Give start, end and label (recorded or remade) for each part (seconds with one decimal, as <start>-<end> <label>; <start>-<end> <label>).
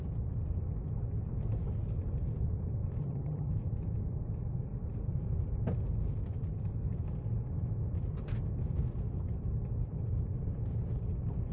0.0-3.0 recorded; 3.0-3.5 remade; 3.5-11.5 recorded